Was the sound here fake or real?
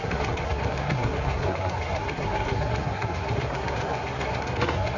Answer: fake